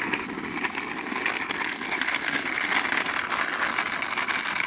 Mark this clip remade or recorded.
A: recorded